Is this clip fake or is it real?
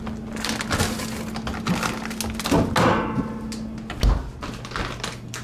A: real